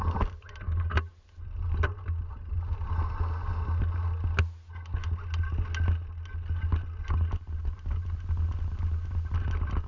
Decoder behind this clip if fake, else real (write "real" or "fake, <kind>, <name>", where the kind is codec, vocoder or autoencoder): real